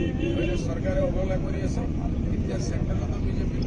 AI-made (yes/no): yes